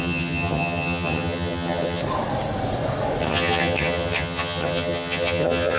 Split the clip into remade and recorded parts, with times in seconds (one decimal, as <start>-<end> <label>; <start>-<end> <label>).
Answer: 0.0-2.0 remade; 2.0-3.2 recorded; 3.2-5.8 remade